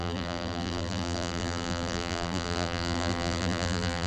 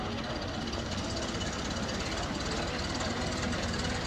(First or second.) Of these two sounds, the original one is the second